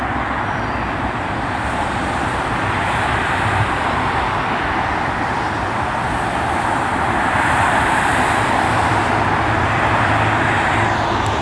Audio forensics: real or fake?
fake